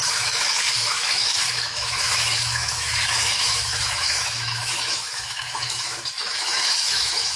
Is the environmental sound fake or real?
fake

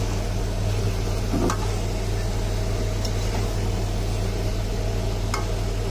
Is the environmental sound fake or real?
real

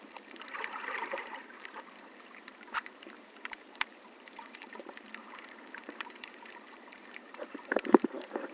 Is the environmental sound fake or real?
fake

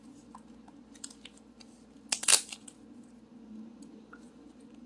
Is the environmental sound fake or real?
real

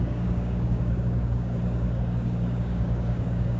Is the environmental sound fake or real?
fake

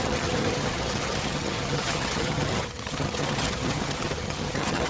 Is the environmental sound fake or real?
fake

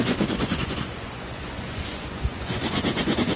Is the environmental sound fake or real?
fake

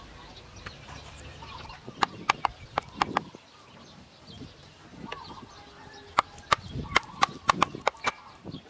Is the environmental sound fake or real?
real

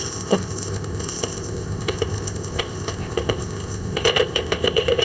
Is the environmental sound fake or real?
fake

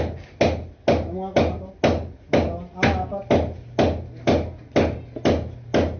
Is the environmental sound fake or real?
real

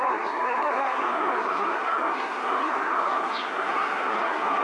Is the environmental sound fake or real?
fake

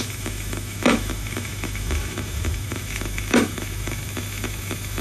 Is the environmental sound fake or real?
fake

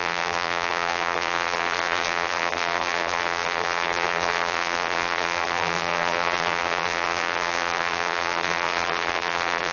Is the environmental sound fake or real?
fake